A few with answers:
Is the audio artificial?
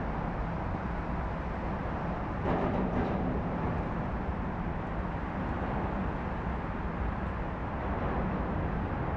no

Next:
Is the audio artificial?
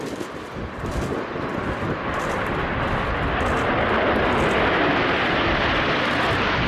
no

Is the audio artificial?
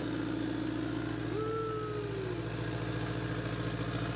no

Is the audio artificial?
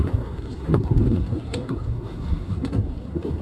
yes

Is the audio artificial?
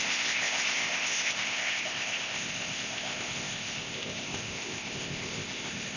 yes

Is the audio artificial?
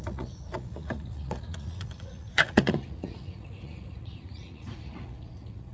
yes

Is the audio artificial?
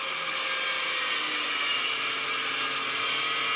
no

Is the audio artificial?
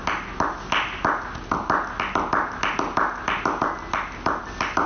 no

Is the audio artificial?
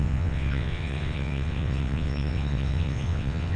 yes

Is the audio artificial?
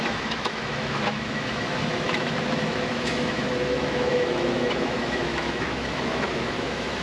yes